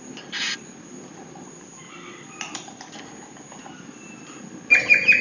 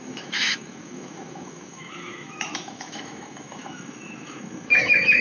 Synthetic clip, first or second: second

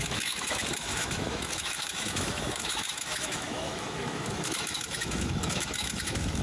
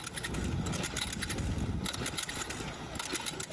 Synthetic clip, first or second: first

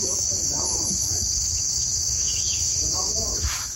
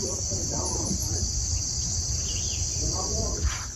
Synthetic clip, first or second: first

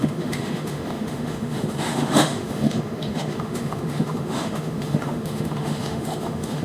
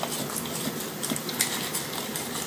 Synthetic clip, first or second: first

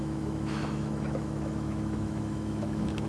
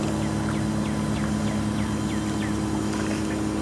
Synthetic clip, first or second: first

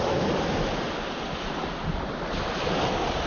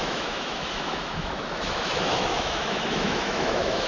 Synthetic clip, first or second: second